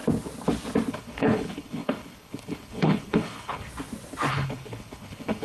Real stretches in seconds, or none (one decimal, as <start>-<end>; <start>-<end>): 0.0-0.9; 3.7-4.3